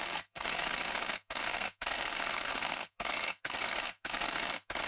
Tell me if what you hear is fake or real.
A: fake